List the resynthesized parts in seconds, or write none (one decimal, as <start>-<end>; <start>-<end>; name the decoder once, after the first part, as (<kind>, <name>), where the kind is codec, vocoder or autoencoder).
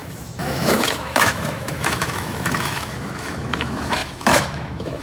0.0-5.0 (autoencoder, DAC-VAE)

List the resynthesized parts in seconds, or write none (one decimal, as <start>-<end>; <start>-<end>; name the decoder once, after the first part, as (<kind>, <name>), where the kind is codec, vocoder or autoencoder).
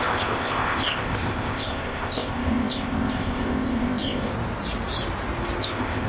0.0-4.3 (codec, ZipCodec); 5.6-6.1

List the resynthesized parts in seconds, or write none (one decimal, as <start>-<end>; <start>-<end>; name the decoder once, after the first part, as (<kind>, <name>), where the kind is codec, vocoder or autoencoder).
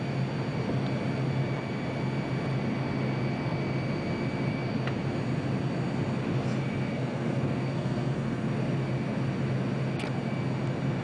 6.8-8.5 (codec, SNAC)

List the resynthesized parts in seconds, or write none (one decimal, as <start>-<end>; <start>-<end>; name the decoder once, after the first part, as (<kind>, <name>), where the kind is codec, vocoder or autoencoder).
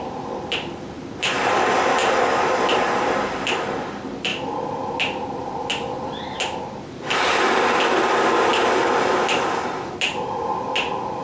0.0-2.0 (vocoder, BigVGAN v2); 3.0-4.3; 6.8-8.5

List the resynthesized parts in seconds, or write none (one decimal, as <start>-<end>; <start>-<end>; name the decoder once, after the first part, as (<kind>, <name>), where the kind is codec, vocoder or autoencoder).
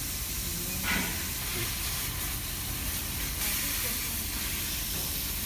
none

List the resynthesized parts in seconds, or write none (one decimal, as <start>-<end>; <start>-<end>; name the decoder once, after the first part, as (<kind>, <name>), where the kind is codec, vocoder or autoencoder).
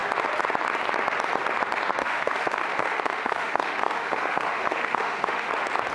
2.0-5.5 (autoencoder, DAC-VAE)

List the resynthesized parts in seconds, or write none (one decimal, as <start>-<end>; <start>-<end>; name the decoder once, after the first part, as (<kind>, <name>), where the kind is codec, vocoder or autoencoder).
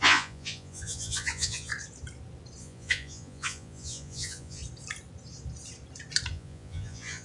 0.0-1.7 (vocoder, Vocos); 2.6-4.6; 6.3-7.2